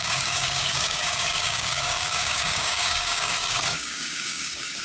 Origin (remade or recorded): remade